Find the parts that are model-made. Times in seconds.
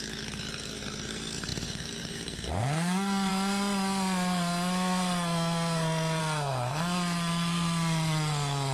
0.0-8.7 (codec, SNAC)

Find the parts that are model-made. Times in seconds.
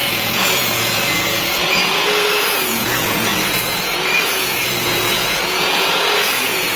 0.0-6.8 (vocoder, Vocos)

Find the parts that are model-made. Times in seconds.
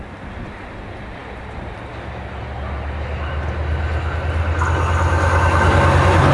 none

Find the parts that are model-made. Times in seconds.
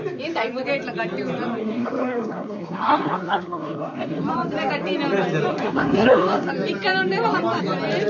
1.6-4.2 (codec, SNAC); 5.5-6.5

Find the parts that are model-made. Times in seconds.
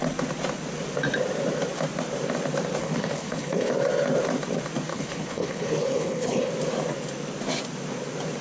2.8-3.7 (codec, HILCodec); 4.9-6.5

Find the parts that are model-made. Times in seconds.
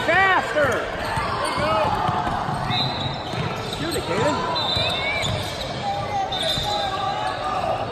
none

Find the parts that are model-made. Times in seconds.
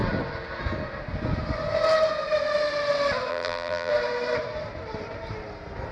3.3-3.9 (vocoder, BigVGAN v2)